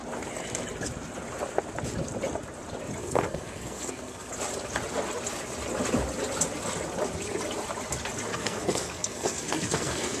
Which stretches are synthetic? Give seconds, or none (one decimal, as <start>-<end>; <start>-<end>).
3.0-4.3; 8.3-10.2

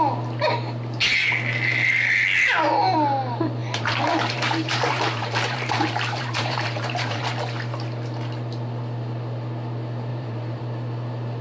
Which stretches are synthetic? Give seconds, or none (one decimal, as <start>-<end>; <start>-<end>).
3.6-7.2; 10.1-10.6